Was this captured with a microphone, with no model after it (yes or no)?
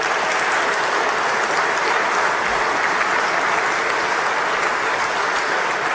yes